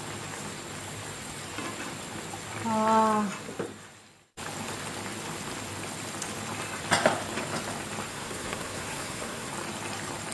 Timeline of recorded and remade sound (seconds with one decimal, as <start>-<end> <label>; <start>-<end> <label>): 0.0-8.1 recorded; 8.1-9.5 remade; 9.5-10.3 recorded